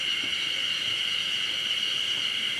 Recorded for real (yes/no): yes